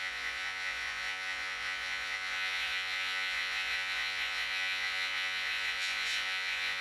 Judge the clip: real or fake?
fake